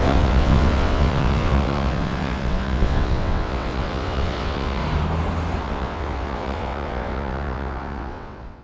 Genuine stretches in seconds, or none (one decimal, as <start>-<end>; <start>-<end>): 4.8-5.6